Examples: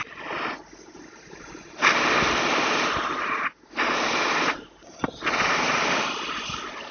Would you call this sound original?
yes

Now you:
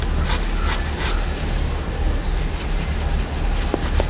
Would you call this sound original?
yes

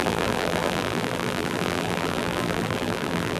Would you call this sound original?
no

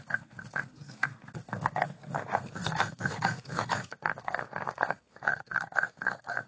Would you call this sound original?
no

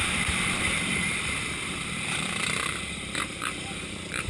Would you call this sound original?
no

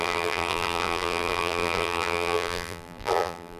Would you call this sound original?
no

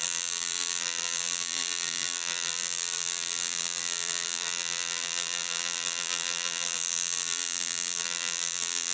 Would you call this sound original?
no